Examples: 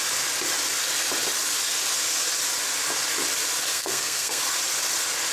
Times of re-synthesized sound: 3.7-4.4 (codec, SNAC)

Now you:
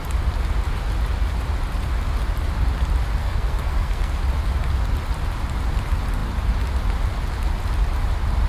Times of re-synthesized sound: 3.2-4.2 (codec, SNAC)

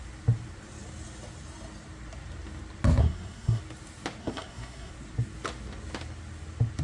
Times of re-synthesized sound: 3.0-3.6 (codec, SNAC); 4.2-4.9

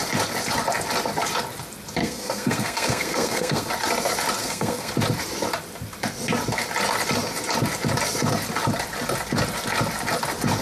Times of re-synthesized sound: 2.0-3.7 (codec, SNAC); 4.4-4.9

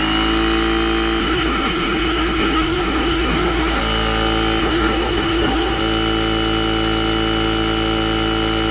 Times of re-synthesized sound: 1.2-3.8 (codec, SNAC); 4.6-5.8

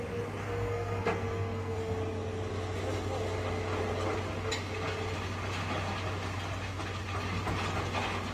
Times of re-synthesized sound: 0.4-2.0 (codec, SNAC)

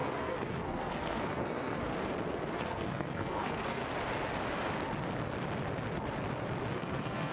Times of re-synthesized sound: 0.0-1.9 (codec, SNAC); 2.5-3.8; 6.7-7.3